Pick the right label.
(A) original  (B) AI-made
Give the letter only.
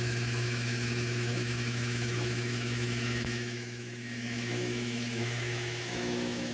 B